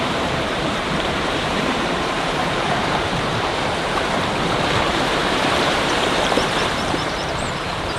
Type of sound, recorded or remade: remade